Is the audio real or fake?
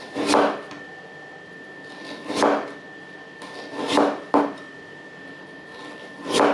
real